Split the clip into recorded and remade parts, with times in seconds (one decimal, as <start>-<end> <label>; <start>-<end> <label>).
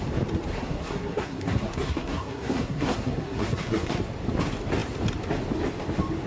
0.0-0.5 recorded; 0.5-4.1 remade; 4.1-6.3 recorded